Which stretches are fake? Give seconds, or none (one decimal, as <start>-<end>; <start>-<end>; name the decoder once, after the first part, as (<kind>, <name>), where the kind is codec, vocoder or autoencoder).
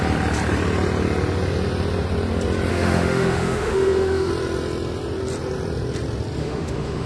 2.7-4.3 (autoencoder, DAC-VAE); 6.4-7.1